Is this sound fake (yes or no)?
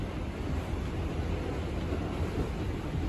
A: no